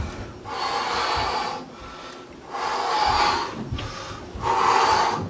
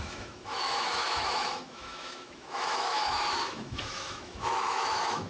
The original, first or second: first